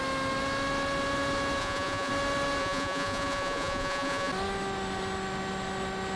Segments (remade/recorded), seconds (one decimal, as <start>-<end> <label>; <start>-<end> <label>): 0.0-1.6 recorded; 1.6-2.1 remade; 2.1-2.6 recorded; 2.6-4.3 remade; 4.3-6.2 recorded